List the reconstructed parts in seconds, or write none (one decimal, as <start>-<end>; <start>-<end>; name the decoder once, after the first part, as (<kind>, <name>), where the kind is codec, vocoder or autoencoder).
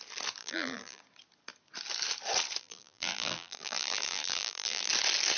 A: 0.4-1.0 (vocoder, BigVGAN v2); 2.6-4.9